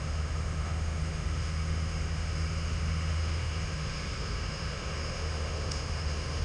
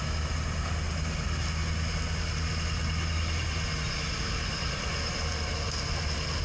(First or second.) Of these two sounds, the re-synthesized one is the first